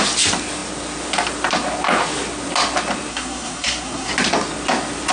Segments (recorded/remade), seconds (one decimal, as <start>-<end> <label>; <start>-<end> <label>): 0.0-3.1 recorded; 3.1-4.1 remade; 4.1-5.1 recorded